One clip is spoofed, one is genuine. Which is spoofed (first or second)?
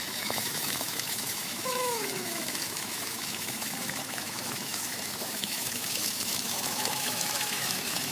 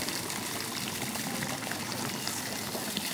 first